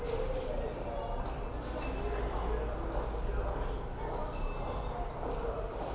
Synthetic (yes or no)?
no